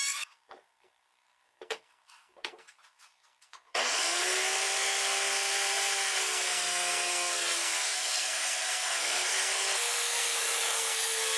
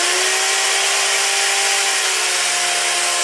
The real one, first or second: second